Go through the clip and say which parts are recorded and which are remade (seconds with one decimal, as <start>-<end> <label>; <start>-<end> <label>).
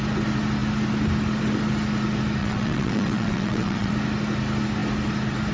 0.0-2.4 recorded; 2.4-3.9 remade; 3.9-5.5 recorded